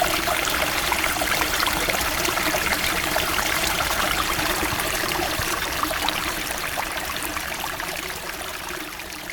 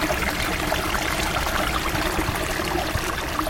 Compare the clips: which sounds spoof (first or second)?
first